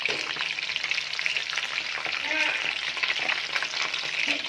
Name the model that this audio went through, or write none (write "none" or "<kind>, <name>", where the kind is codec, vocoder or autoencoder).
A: none